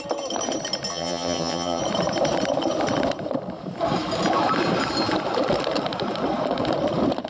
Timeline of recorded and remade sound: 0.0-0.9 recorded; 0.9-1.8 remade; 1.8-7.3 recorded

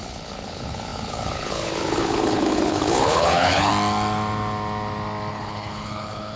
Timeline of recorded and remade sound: 0.0-3.7 remade; 3.7-5.3 recorded; 5.3-6.4 remade